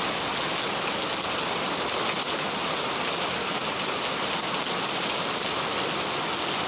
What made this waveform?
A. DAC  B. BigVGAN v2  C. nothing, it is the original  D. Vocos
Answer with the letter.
C